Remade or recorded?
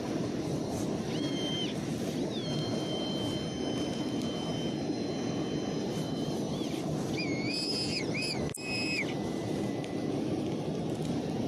remade